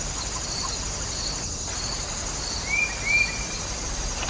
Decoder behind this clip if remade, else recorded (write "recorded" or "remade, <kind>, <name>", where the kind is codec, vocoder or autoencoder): recorded